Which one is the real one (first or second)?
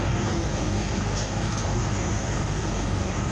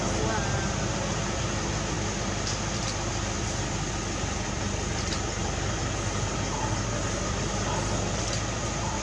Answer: second